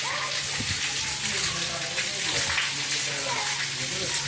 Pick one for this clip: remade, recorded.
recorded